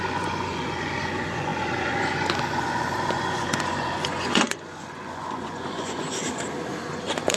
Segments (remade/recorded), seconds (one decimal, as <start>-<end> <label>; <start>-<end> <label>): 0.0-6.2 remade; 6.2-6.8 recorded; 6.8-7.4 remade